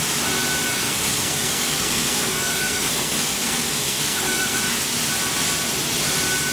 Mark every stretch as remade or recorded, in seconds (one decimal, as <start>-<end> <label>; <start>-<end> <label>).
0.0-0.7 recorded; 0.7-4.6 remade; 4.6-6.5 recorded